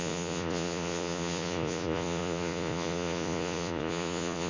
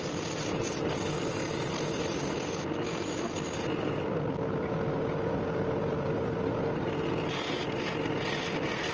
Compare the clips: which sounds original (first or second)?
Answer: second